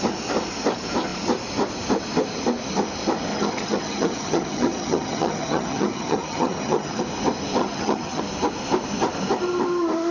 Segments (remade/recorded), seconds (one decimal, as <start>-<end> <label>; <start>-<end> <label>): 0.0-3.3 recorded; 3.3-7.0 remade; 7.0-7.6 recorded; 7.6-8.2 remade; 8.2-10.1 recorded